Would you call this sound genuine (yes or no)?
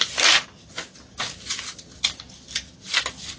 yes